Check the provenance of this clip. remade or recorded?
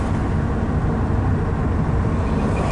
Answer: recorded